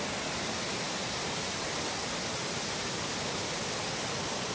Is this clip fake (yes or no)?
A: no